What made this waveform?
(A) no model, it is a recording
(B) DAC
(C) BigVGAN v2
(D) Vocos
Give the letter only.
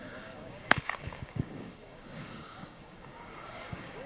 B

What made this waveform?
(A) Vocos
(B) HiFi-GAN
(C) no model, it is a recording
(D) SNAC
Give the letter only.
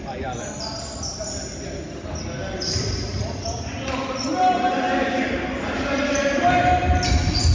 C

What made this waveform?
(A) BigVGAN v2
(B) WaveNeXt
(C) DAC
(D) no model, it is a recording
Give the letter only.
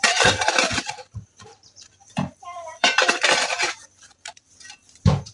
A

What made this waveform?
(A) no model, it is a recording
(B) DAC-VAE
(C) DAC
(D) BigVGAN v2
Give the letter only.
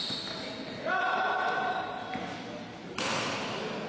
A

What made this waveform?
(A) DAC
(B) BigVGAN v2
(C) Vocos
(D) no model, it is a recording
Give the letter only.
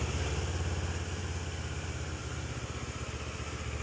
D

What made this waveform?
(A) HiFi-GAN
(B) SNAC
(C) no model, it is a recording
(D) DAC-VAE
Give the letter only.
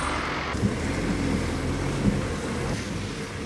C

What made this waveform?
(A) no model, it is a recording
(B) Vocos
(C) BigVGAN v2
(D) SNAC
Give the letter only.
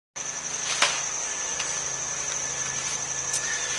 A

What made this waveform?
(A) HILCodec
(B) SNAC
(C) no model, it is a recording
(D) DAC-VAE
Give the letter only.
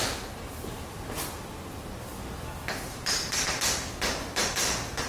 C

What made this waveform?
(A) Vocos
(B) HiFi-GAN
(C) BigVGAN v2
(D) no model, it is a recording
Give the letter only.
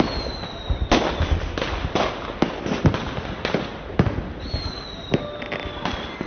D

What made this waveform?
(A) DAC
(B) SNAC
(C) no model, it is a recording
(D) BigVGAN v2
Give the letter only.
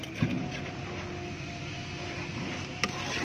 C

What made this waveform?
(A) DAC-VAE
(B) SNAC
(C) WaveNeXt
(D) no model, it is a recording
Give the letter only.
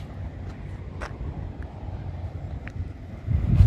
D